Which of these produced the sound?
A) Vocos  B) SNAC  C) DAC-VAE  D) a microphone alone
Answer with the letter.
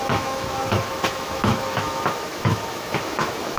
C